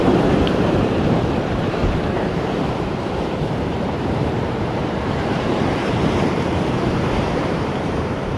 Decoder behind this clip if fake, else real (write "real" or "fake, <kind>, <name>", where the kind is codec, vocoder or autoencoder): fake, vocoder, BigVGAN v2